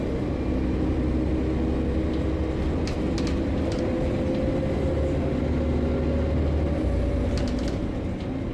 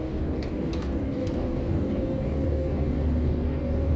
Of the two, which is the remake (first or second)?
second